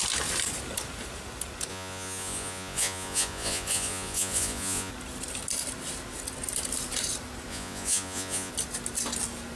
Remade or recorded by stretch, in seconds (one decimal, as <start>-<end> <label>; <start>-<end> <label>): 0.0-1.7 recorded; 1.7-4.9 remade; 4.9-7.5 recorded; 7.5-8.5 remade; 8.5-9.6 recorded